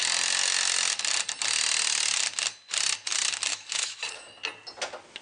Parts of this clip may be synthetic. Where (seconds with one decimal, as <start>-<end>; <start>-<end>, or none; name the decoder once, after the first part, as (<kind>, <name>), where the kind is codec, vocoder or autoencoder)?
3.5-4.0 (autoencoder, DAC-VAE)